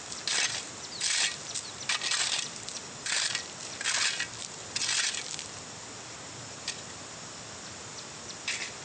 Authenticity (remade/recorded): recorded